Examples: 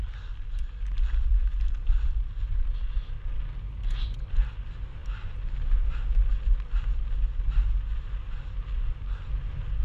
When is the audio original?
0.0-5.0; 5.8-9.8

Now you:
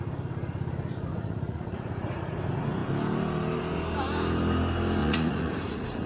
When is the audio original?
0.0-1.1; 2.3-5.0

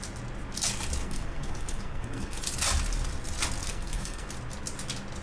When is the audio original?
0.0-1.0; 2.4-3.6; 4.3-5.2

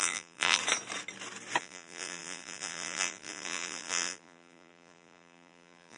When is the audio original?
0.6-1.6

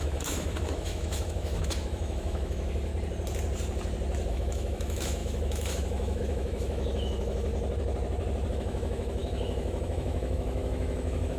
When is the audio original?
2.9-4.3; 7.5-8.5

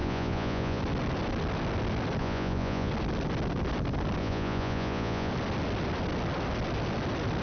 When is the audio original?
0.8-2.2; 2.9-4.2; 5.3-7.4

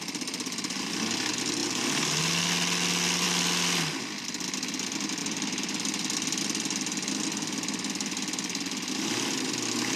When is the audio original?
0.0-5.2; 5.7-10.0